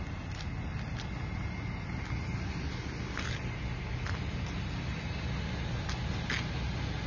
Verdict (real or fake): real